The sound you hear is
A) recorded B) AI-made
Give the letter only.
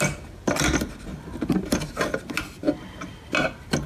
A